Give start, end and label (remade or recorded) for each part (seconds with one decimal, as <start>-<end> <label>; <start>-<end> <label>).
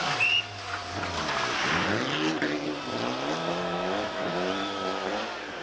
0.0-3.4 recorded; 3.4-5.1 remade; 5.1-5.6 recorded